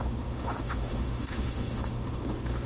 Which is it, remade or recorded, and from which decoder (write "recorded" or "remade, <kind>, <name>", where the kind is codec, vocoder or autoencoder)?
remade, autoencoder, DAC-VAE